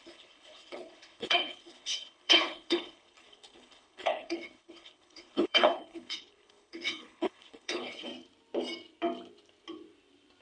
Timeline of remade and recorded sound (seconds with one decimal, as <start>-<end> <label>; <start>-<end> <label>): 0.0-8.1 remade; 8.1-10.4 recorded